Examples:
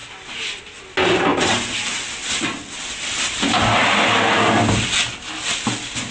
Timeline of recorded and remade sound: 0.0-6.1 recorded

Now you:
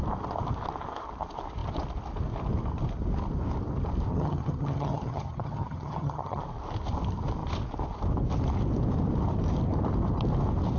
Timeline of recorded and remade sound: 0.0-4.1 recorded; 4.1-6.4 remade; 6.4-10.8 recorded

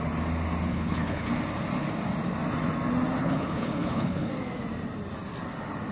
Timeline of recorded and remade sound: 0.0-0.7 recorded; 0.7-1.3 remade; 1.3-3.2 recorded; 3.2-4.3 remade; 4.3-5.9 recorded

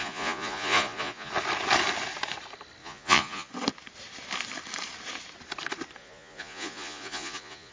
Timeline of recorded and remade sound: 0.0-1.3 remade; 1.3-2.8 recorded; 2.8-3.5 remade; 3.5-6.0 recorded; 6.0-7.7 remade

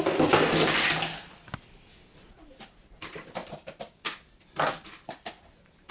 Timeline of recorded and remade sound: 0.0-5.9 recorded